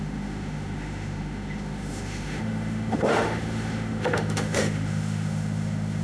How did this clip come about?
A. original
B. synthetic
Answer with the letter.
B